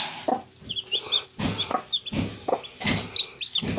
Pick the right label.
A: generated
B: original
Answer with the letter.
B